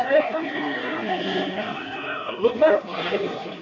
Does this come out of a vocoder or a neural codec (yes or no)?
yes